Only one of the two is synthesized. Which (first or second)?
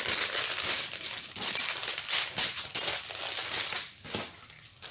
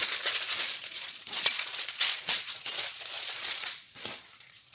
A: second